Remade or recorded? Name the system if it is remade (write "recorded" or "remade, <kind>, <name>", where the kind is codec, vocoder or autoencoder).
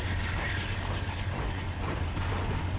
recorded